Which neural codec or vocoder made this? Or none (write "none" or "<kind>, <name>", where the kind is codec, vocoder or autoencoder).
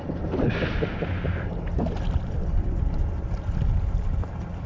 none